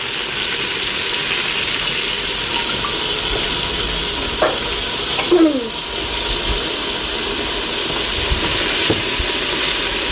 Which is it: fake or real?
real